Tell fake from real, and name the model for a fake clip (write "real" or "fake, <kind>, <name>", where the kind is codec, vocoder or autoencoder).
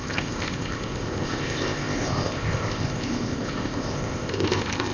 fake, codec, ZipCodec